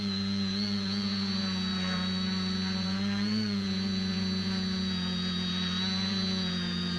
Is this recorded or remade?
remade